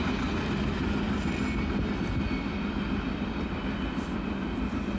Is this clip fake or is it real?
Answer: real